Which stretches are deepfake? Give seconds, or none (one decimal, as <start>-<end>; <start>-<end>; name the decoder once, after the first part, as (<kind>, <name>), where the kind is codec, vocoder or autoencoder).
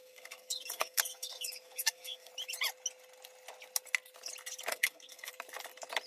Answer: 0.0-2.3 (codec, SNAC); 4.7-5.3